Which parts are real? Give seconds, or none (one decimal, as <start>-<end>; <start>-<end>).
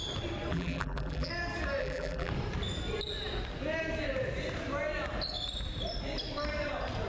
0.0-0.5; 1.3-1.8; 2.3-7.1